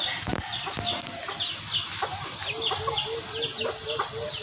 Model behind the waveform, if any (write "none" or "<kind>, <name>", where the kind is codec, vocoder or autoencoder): none